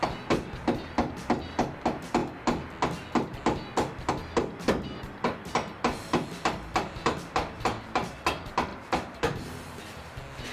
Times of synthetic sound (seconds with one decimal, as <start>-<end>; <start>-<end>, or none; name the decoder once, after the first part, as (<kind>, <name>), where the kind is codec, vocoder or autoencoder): 8.7-9.8 (vocoder, BigVGAN v2)